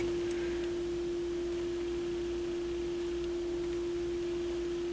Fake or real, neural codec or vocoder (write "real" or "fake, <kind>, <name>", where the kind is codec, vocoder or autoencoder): real